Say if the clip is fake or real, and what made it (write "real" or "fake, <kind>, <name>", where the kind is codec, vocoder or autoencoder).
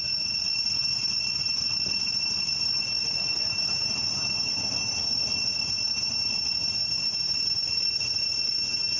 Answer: real